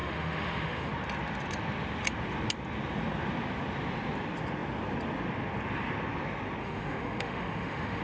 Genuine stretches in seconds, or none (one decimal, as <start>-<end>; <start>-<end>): 0.9-6.6